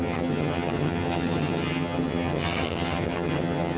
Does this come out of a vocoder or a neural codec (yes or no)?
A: yes